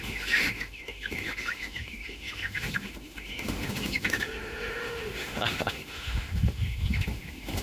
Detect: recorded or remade remade